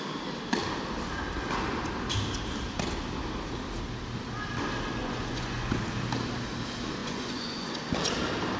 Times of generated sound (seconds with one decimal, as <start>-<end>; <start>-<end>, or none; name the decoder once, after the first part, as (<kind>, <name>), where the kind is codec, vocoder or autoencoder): 5.0-5.8 (vocoder, Vocos); 7.0-7.7